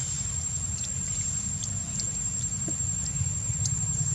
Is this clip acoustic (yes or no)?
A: yes